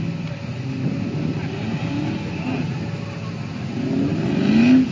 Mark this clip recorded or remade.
recorded